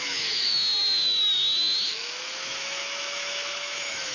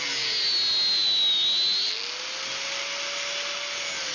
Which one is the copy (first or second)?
first